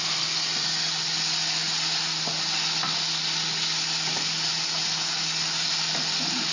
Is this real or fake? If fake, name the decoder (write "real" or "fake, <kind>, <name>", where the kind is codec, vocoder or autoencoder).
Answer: real